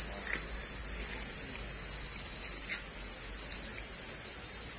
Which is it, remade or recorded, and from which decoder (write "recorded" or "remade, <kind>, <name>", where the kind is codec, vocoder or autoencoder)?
recorded